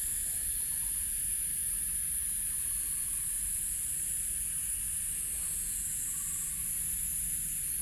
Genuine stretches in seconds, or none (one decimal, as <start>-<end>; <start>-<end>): 0.0-7.8